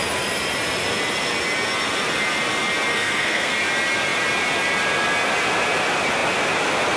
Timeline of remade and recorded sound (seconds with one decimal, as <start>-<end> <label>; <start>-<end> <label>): 0.0-2.9 recorded; 2.9-3.5 remade; 3.5-7.0 recorded